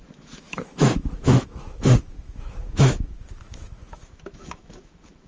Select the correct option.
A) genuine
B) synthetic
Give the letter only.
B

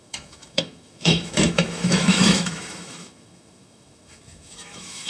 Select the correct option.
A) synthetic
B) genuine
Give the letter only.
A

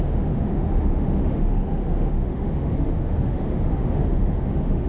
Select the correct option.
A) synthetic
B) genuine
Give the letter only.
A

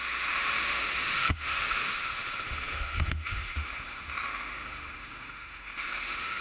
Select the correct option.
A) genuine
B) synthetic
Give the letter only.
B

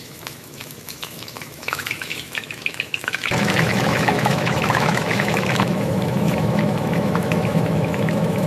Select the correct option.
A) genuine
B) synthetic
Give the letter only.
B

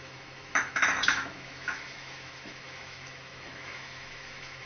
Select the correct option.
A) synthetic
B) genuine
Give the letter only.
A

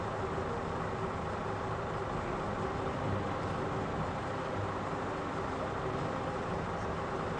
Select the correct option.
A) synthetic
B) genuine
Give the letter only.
B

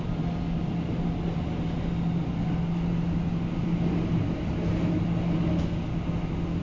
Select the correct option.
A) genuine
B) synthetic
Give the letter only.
A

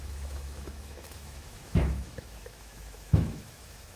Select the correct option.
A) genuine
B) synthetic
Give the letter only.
B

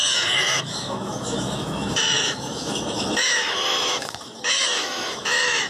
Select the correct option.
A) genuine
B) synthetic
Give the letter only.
B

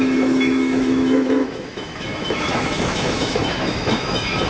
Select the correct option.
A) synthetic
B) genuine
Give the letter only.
A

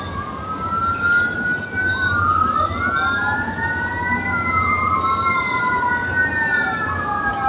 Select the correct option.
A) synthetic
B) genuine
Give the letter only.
B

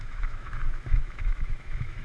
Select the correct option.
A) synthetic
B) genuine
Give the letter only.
A